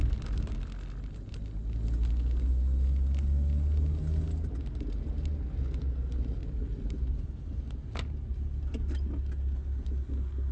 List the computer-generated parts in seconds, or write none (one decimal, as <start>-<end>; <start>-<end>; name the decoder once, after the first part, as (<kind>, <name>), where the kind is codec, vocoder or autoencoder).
6.4-7.6 (vocoder, BigVGAN v2)